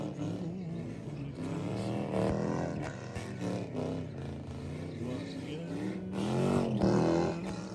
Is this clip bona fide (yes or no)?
yes